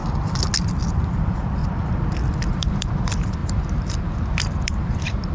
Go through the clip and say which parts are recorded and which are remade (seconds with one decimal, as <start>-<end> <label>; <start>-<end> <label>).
0.0-0.9 recorded; 0.9-1.6 remade; 1.6-2.5 recorded; 2.5-5.3 remade